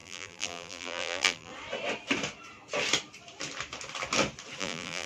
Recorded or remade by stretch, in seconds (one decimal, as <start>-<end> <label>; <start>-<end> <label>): 0.0-1.5 remade; 1.5-4.6 recorded; 4.6-5.1 remade